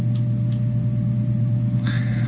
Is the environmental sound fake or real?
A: real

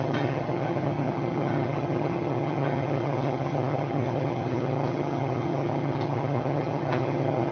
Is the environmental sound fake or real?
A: fake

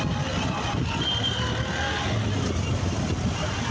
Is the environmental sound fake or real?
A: real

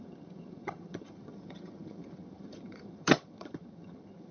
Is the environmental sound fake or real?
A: fake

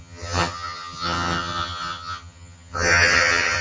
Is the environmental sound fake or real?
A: fake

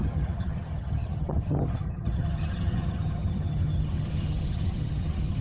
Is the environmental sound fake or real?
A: fake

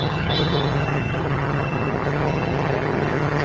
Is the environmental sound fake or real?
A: fake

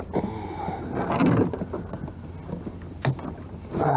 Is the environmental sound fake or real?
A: real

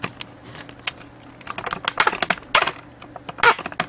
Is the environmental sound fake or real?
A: real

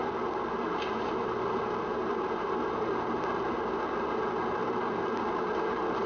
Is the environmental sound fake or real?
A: real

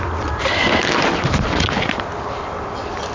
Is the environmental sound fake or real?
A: real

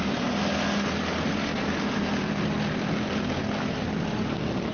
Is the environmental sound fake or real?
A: real